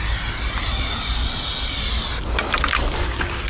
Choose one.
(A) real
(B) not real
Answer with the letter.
A